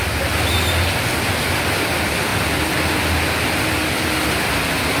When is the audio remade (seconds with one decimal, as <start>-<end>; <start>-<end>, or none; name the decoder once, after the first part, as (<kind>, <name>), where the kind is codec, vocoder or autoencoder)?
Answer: none